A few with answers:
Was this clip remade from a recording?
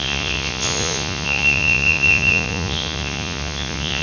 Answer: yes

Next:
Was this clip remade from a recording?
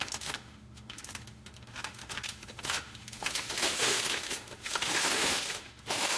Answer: yes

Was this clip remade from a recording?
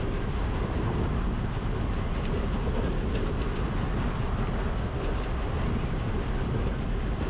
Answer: no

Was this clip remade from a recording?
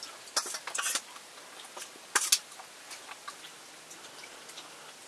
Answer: no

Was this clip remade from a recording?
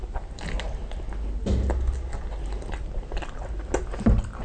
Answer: no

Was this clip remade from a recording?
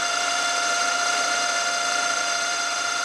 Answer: yes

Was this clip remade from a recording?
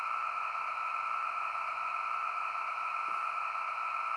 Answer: no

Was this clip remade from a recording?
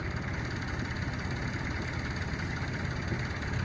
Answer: no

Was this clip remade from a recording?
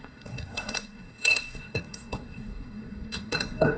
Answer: yes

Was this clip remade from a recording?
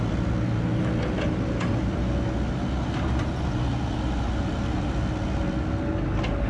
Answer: no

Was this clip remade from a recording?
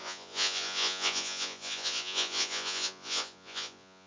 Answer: yes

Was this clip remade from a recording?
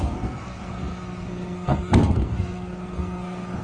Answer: yes